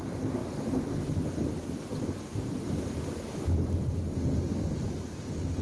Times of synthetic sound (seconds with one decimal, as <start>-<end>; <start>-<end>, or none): none